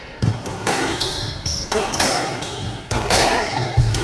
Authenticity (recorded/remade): remade